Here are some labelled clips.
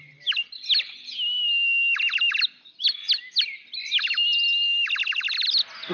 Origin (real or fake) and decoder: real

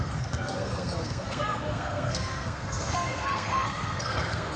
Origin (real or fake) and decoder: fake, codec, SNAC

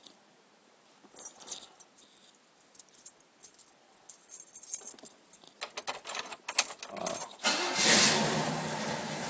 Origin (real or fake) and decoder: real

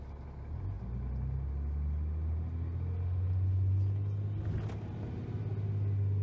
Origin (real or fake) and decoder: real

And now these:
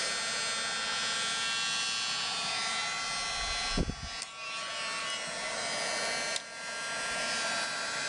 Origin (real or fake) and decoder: real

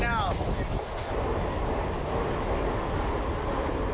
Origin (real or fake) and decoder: real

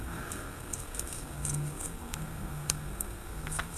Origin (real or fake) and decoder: fake, codec, SNAC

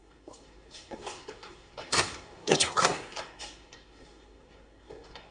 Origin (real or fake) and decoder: fake, codec, SNAC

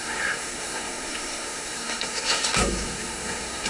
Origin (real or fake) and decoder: fake, codec, SNAC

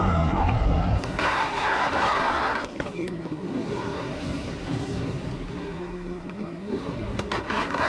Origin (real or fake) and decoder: fake, codec, SNAC